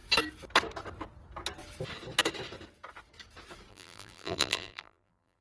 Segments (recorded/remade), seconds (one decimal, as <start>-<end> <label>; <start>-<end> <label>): 0.0-3.7 recorded; 3.7-5.4 remade